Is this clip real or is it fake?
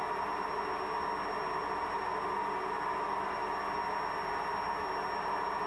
real